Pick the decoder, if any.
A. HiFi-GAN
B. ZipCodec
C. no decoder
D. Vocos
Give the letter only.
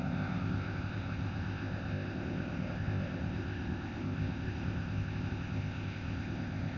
B